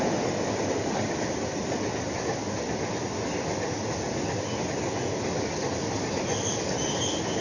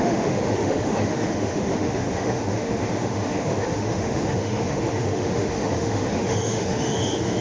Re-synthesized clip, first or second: second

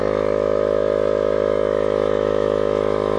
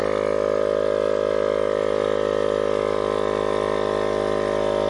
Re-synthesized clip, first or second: first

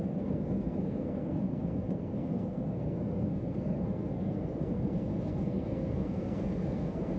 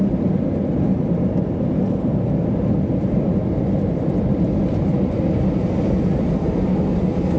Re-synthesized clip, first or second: first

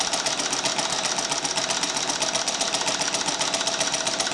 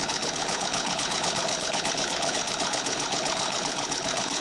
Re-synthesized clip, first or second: second